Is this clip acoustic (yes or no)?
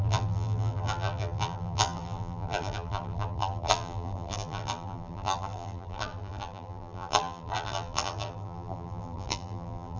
no